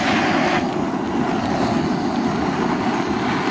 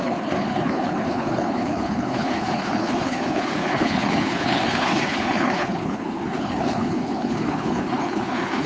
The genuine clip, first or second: first